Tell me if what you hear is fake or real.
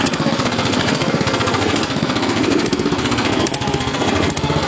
fake